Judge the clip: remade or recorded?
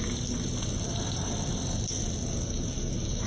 remade